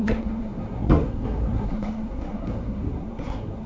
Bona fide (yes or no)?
no